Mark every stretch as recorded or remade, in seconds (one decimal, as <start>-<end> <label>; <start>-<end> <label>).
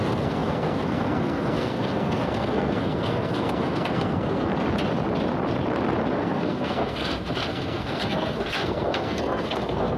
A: 0.0-4.5 remade; 4.5-6.1 recorded; 6.1-10.0 remade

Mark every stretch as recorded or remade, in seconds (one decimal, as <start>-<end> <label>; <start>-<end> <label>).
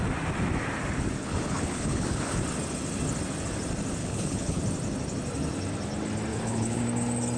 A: 0.0-1.2 recorded; 1.2-2.4 remade; 2.4-4.0 recorded; 4.0-4.6 remade; 4.6-6.3 recorded; 6.3-6.8 remade; 6.8-7.4 recorded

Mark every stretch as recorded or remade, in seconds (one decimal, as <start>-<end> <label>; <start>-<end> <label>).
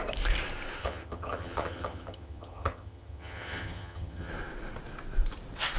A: 0.0-0.8 recorded; 0.8-4.3 remade; 4.3-5.8 recorded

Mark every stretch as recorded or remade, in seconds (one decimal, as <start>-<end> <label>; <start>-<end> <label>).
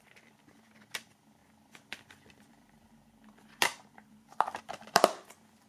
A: 0.0-5.7 remade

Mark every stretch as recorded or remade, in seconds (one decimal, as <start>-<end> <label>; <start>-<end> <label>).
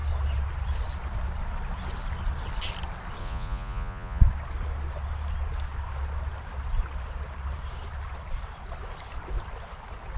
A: 0.0-3.2 recorded; 3.2-4.2 remade; 4.2-10.2 recorded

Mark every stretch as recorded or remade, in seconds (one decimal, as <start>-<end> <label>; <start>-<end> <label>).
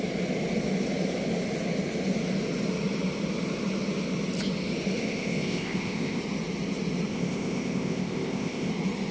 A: 0.0-5.0 recorded; 5.0-6.2 remade; 6.2-7.1 recorded; 7.1-8.7 remade; 8.7-9.1 recorded